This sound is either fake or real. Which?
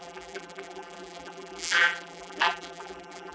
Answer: fake